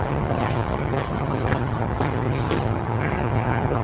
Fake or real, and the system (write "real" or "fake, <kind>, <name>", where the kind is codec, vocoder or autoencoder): fake, vocoder, HiFi-GAN